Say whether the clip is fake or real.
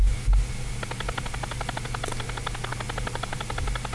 real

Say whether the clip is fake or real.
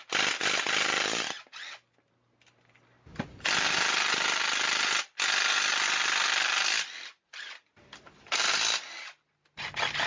real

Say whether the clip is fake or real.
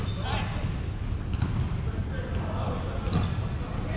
real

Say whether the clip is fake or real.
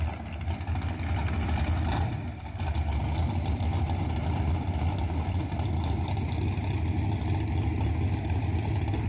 real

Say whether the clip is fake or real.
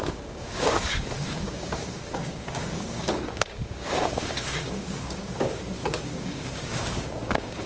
fake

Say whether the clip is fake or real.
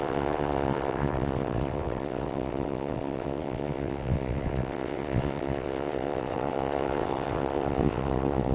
fake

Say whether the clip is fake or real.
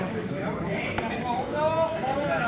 fake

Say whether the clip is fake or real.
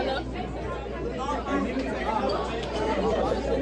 real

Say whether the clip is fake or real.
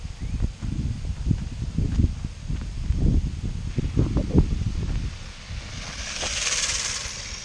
real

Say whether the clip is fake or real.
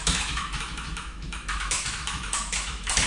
fake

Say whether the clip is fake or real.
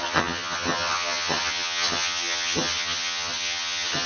fake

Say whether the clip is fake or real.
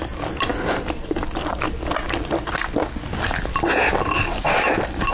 real